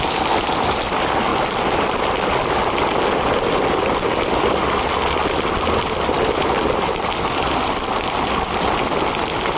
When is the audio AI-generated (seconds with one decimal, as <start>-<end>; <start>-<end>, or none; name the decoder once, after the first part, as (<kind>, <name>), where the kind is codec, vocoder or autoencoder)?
none